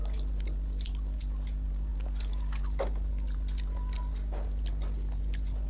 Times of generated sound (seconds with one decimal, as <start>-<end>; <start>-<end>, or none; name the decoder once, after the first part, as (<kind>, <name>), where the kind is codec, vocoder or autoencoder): none